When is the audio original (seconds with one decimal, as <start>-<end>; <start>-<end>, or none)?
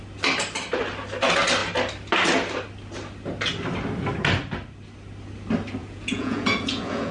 0.0-5.8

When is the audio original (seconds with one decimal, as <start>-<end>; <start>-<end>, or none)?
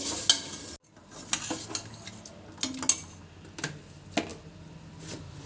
0.0-5.5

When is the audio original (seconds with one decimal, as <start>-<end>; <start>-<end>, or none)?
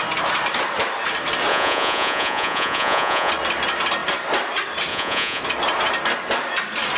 0.0-1.5; 3.3-4.9; 5.4-7.0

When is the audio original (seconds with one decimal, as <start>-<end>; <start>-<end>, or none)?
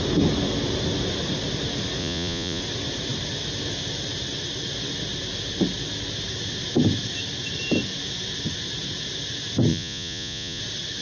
0.0-2.0; 2.6-9.7; 10.6-11.0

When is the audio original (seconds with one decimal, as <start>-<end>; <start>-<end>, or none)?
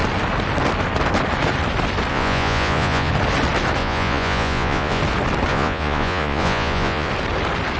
0.0-2.1; 3.1-3.8; 5.0-5.5; 7.1-7.8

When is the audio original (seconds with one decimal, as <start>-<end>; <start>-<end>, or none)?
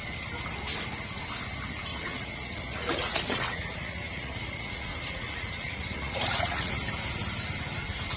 0.0-1.9; 6.7-8.2